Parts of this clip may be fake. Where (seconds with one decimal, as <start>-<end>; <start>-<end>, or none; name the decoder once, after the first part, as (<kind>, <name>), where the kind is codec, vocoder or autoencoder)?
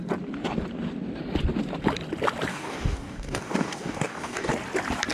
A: 2.5-4.5 (codec, DAC)